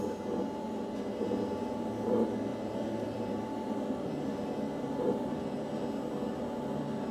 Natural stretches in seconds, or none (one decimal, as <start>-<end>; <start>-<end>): 0.0-2.5; 5.4-7.1